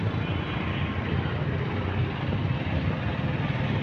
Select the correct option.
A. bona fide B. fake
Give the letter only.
A